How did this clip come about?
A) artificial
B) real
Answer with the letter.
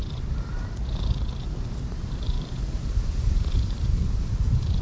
A